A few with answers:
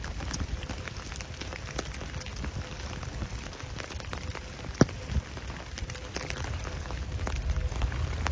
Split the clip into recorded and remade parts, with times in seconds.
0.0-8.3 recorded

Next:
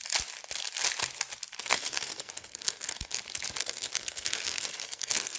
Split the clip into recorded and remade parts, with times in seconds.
0.0-1.6 recorded; 1.6-3.2 remade; 3.2-3.6 recorded; 3.6-5.4 remade

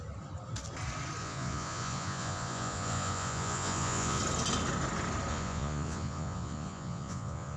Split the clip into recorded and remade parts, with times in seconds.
0.0-1.2 recorded; 1.2-4.2 remade; 4.2-5.3 recorded; 5.3-7.6 remade